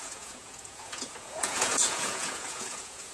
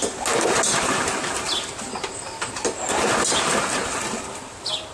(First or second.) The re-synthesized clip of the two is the first